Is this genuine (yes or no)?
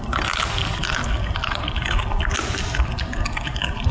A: yes